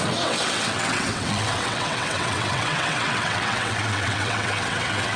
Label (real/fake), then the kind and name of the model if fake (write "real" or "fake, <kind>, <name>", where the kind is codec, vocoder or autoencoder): fake, vocoder, WaveNeXt